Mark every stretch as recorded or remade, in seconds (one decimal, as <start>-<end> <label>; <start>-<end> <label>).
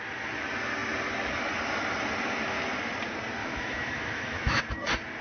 0.0-3.4 recorded; 3.4-4.6 remade; 4.6-5.2 recorded